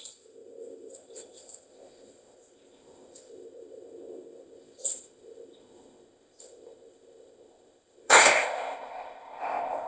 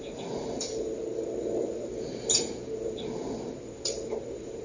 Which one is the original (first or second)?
second